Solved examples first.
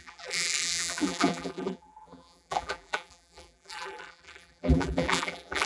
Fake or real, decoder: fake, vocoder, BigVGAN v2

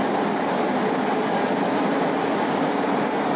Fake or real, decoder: fake, vocoder, BigVGAN v2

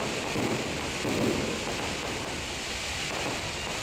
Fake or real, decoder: real